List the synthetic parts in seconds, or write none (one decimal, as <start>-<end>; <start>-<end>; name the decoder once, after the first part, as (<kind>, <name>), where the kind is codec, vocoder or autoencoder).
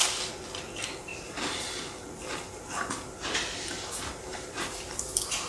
4.3-5.5 (vocoder, BigVGAN v2)